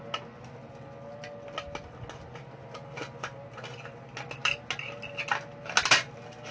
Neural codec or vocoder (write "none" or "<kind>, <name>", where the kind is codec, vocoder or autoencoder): none